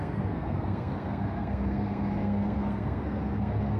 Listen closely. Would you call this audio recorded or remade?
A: remade